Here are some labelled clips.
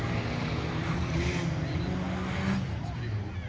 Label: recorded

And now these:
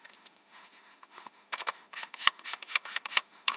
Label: remade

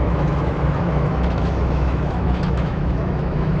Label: remade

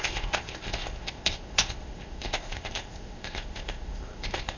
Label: remade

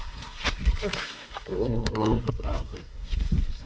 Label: remade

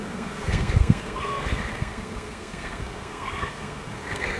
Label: remade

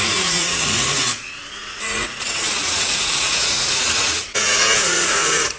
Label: remade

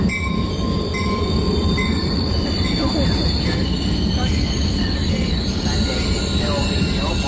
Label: recorded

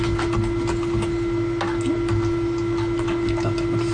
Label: recorded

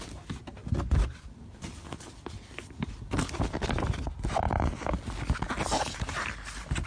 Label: recorded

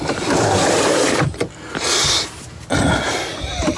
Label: recorded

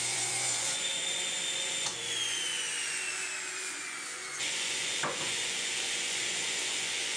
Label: remade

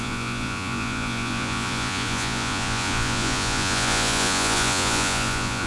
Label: remade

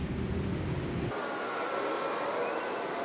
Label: recorded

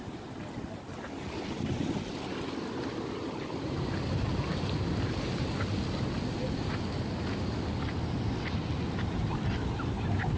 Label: recorded